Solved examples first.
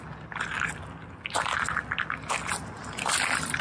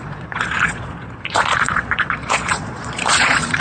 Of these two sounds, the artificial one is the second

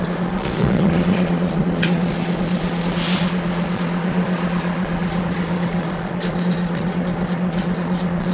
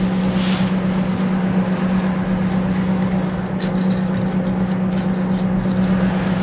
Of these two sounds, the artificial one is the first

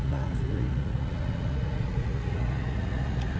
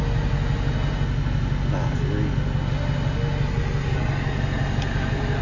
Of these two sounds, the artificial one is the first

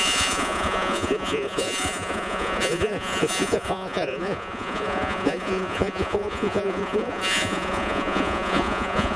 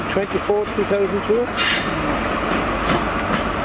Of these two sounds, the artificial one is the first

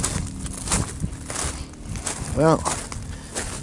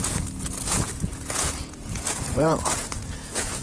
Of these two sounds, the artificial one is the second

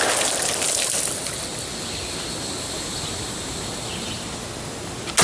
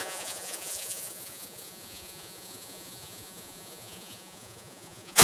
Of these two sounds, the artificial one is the second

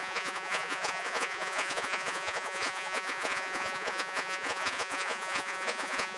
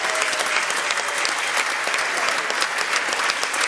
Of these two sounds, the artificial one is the first